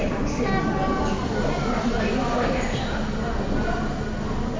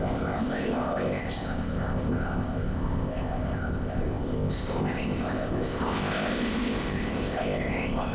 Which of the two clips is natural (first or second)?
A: first